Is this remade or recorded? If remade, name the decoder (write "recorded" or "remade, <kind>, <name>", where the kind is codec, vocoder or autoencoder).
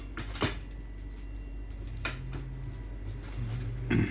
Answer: recorded